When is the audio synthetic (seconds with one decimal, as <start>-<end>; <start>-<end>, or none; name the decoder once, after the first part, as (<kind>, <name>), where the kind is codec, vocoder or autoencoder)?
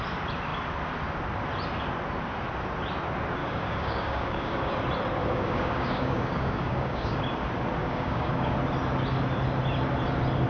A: 3.4-4.7 (codec, DAC); 5.2-7.2; 7.8-8.5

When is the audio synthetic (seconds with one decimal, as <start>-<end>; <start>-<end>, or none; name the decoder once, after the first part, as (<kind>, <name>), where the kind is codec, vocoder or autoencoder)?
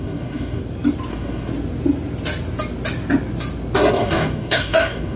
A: 0.0-0.6 (codec, DAC); 1.1-1.5; 3.9-5.2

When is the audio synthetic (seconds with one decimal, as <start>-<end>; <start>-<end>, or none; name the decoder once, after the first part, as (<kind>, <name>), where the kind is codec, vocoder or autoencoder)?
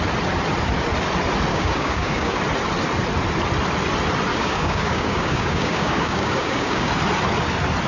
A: 1.5-2.4 (codec, DAC); 4.3-6.9